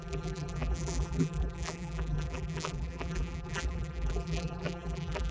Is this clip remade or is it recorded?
remade